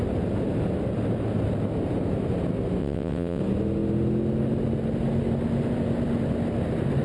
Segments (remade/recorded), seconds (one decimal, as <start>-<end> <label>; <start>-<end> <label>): 0.0-2.8 recorded; 2.8-3.4 remade; 3.4-7.0 recorded